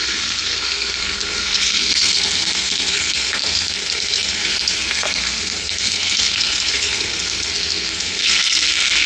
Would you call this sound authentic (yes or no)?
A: no